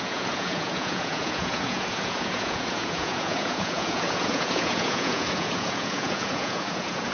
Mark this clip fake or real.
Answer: fake